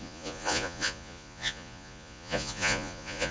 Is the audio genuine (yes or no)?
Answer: no